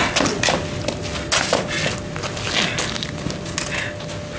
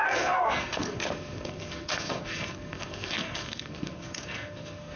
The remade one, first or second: second